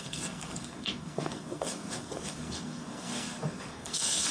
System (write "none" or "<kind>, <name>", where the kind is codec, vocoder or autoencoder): codec, SNAC